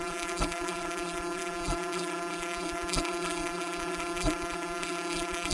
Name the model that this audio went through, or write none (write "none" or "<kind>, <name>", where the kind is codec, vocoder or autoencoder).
vocoder, BigVGAN v2